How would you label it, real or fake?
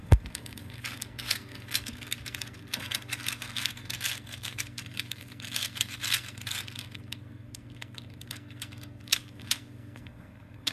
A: fake